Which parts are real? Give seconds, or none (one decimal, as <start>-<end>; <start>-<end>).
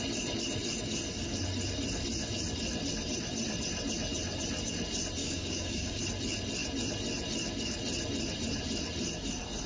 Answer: 0.0-5.2; 6.0-9.7